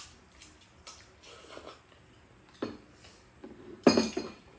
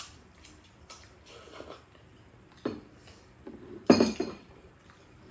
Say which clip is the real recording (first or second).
first